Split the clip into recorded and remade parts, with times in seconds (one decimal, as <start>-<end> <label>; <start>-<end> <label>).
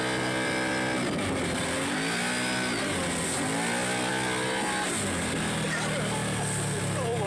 0.0-7.3 recorded